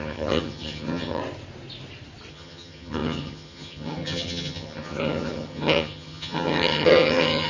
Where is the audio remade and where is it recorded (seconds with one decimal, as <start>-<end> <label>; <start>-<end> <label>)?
0.0-1.2 remade; 1.2-2.3 recorded; 2.3-7.5 remade